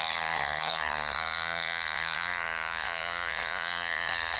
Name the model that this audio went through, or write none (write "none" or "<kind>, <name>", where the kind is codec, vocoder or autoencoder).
codec, SNAC